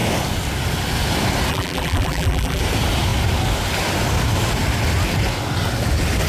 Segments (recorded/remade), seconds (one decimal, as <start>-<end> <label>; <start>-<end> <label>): 0.0-1.5 recorded; 1.5-2.6 remade; 2.6-6.3 recorded